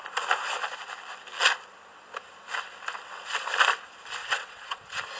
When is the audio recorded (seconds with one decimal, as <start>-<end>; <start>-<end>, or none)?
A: 0.0-4.2; 4.8-5.2